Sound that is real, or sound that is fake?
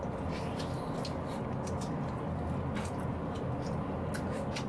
real